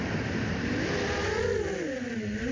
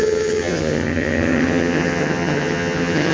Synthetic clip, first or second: second